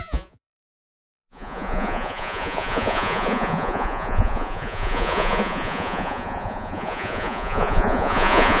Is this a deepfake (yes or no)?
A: yes